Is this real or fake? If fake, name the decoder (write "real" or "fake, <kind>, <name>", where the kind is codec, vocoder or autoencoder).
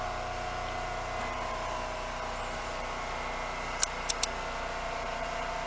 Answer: real